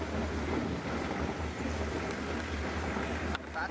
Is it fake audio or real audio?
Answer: real